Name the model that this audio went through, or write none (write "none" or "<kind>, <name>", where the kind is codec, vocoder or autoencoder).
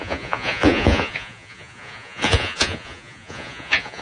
vocoder, Vocos